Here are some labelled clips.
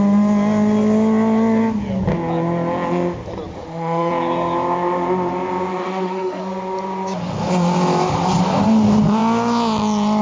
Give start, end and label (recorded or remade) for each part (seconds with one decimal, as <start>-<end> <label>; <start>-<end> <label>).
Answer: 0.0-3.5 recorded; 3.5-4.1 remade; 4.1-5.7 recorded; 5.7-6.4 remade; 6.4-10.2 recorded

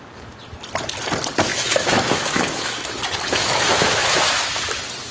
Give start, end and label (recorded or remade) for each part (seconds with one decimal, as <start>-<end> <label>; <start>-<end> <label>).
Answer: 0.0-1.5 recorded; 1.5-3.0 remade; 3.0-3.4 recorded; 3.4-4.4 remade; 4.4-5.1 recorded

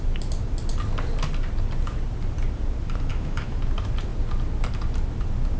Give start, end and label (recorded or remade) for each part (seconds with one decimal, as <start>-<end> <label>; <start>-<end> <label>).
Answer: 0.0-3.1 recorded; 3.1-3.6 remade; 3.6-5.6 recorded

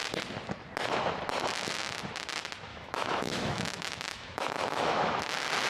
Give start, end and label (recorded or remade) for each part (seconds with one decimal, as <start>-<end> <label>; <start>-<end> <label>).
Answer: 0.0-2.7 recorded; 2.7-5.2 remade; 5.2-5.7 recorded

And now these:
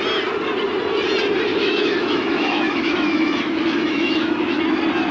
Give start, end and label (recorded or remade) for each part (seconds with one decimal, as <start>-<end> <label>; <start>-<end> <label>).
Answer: 0.0-1.5 recorded; 1.5-4.6 remade; 4.6-5.1 recorded